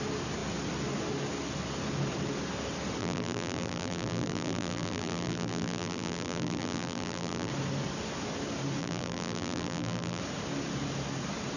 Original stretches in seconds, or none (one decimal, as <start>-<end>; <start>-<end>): 0.0-3.0; 7.5-8.8; 10.2-11.6